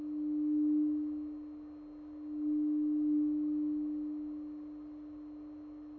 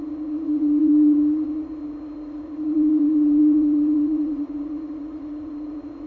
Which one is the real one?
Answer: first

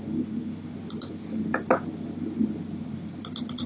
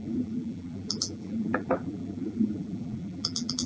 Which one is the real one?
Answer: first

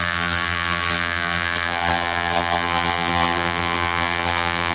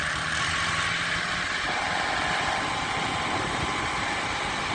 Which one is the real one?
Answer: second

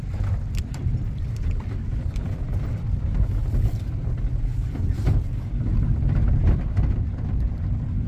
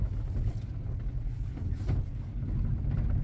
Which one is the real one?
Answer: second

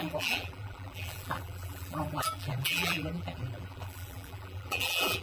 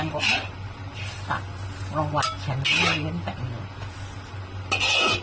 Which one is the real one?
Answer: second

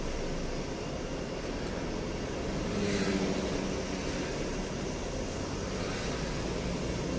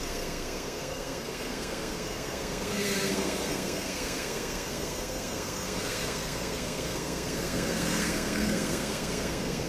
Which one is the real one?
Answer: first